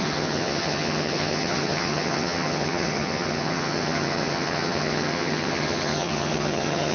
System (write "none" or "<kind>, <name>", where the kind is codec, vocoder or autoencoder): vocoder, HiFi-GAN